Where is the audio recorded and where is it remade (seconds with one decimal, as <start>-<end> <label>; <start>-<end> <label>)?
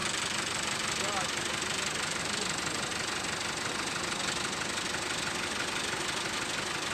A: 0.0-6.9 recorded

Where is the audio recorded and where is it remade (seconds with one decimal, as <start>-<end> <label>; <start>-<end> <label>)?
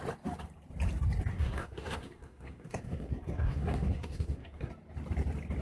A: 0.0-1.3 recorded; 1.3-4.7 remade; 4.7-5.6 recorded